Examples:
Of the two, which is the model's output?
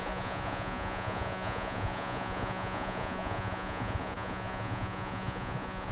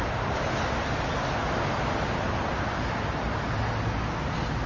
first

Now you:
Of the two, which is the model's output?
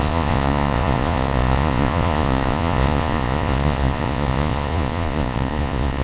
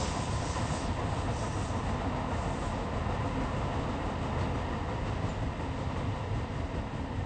first